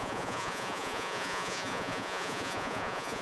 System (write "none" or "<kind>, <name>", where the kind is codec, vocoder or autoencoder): vocoder, Vocos